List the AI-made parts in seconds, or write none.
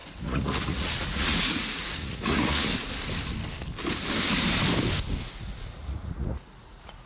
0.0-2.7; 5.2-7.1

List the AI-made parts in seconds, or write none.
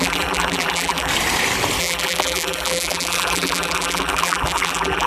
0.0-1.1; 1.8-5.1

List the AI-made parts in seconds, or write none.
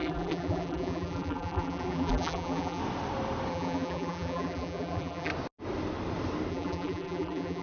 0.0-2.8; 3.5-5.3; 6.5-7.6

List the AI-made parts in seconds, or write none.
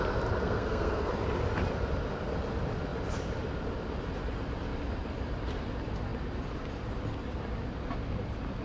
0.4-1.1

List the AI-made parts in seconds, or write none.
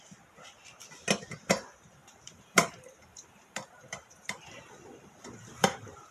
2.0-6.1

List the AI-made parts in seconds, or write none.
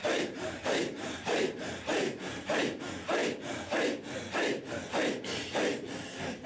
0.0-2.8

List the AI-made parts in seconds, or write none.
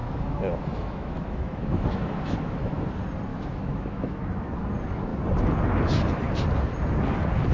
0.0-2.9; 3.3-4.6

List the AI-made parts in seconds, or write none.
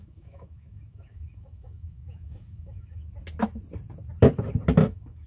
0.0-3.0; 4.8-5.3